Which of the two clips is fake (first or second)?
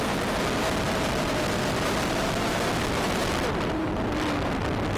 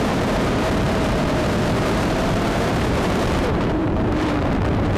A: second